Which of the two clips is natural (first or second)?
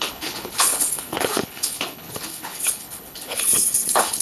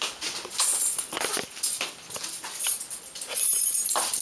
second